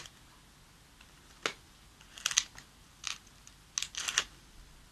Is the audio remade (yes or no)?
no